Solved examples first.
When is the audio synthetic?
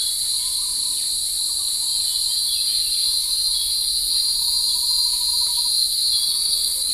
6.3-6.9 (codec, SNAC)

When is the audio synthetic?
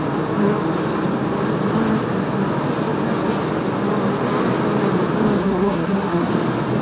5.4-6.3 (codec, SNAC)